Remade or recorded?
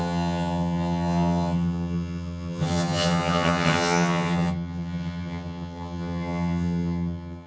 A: remade